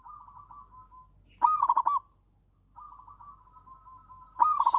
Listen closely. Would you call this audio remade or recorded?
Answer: recorded